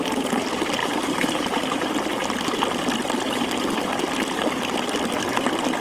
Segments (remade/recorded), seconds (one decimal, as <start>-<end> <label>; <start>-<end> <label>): 0.0-0.8 recorded; 0.8-1.8 remade; 1.8-5.8 recorded